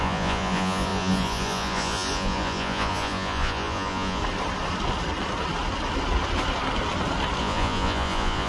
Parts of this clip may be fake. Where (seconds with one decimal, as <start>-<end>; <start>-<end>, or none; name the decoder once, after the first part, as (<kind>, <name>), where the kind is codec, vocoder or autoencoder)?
0.0-4.2 (vocoder, Vocos); 7.4-8.5